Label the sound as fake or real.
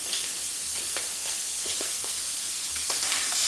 fake